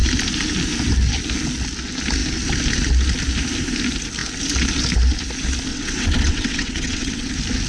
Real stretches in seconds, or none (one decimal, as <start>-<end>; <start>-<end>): 0.0-5.7; 7.3-7.7